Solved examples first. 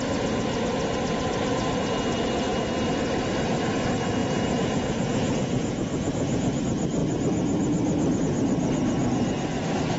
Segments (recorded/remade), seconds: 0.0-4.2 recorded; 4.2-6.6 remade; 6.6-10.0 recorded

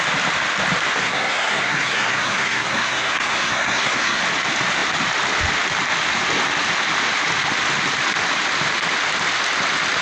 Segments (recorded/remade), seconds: 0.0-1.0 recorded; 1.0-4.2 remade; 4.2-10.0 recorded

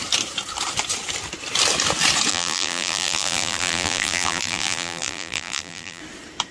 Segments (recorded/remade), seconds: 0.0-2.3 recorded; 2.3-6.0 remade; 6.0-6.5 recorded

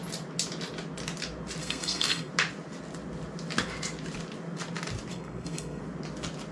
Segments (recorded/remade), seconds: 0.0-1.6 recorded; 1.6-2.3 remade; 2.3-5.1 recorded; 5.1-5.8 remade; 5.8-6.5 recorded

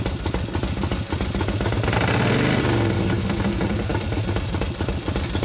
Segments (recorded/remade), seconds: 0.0-5.4 recorded

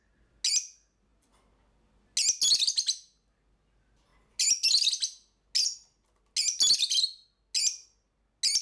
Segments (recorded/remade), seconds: 0.0-8.6 recorded

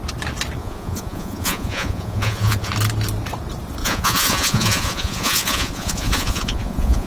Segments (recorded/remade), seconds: 0.0-0.6 recorded; 0.6-2.7 remade; 2.7-3.8 recorded; 3.8-7.1 remade

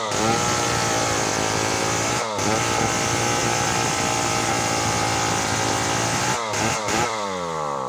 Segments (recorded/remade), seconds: 0.0-1.3 recorded; 1.3-1.8 remade; 1.8-6.8 recorded; 6.8-7.9 remade